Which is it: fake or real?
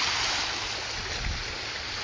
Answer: real